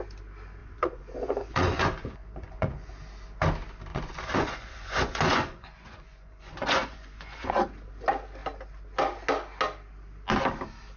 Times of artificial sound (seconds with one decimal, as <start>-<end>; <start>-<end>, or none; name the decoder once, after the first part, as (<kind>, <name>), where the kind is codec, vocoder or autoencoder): 0.6-2.9 (vocoder, Vocos); 3.9-7.5